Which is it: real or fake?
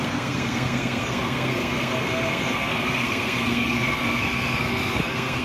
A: fake